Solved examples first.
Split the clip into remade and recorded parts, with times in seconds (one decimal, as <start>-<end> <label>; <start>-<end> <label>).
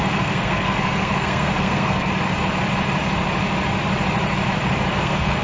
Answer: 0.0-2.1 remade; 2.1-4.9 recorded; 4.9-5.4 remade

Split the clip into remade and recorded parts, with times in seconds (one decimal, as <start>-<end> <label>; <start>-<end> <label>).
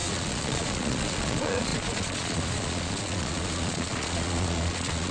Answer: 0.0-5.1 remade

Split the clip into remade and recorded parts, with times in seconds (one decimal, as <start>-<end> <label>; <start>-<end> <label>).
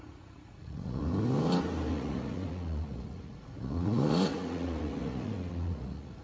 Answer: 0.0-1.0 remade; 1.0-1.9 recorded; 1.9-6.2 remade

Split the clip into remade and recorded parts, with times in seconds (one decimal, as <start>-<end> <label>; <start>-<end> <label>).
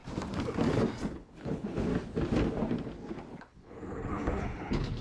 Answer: 0.0-1.1 recorded; 1.1-1.9 remade; 1.9-3.3 recorded; 3.3-5.0 remade